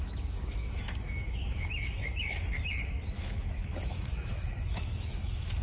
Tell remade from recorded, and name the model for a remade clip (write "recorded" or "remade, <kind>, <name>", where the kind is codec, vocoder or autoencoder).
remade, autoencoder, DAC-VAE